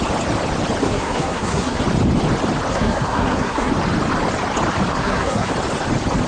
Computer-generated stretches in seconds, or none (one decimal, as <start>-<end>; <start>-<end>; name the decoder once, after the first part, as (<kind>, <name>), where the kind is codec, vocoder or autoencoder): 0.8-1.8 (codec, SNAC); 2.7-3.7; 4.9-5.5

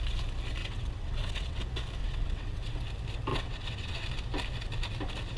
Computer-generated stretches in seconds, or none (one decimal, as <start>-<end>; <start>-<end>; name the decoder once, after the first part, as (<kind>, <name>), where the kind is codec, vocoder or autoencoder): 0.6-1.6 (vocoder, WaveNeXt); 2.0-2.8; 3.3-4.1

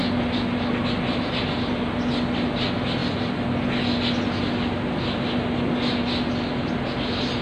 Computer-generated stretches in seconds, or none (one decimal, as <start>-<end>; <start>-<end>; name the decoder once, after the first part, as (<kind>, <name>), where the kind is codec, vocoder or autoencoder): none

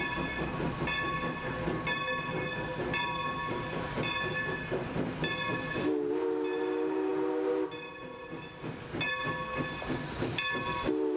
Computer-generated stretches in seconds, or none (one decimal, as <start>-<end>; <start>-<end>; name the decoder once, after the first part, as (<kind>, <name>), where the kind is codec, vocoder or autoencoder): none

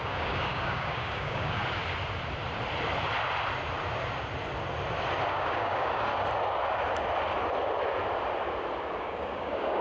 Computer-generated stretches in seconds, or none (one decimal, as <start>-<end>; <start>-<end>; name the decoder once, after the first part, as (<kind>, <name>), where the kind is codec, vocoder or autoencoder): 0.0-1.6 (codec, DAC); 5.3-6.1; 9.0-9.8